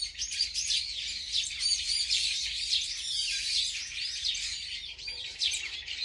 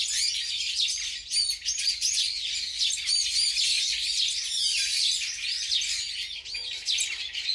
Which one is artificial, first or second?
first